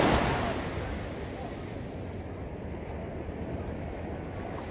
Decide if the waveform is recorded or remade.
recorded